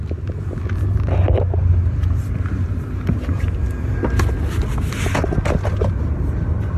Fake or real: real